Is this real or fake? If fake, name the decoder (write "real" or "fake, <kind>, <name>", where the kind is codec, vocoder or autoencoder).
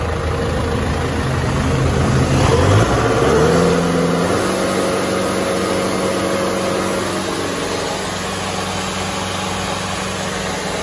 real